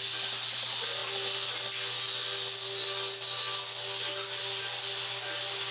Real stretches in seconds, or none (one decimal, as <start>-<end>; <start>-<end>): 0.0-5.7